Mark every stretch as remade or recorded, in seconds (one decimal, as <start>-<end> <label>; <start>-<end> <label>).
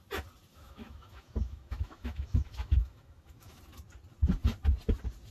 0.0-0.5 recorded; 0.5-3.6 remade; 3.6-5.3 recorded